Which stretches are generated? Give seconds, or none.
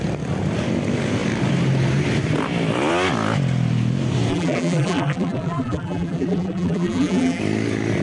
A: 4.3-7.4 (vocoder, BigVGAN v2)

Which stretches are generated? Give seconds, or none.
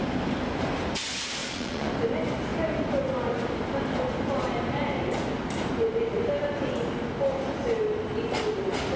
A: 1.4-1.9 (vocoder, Vocos)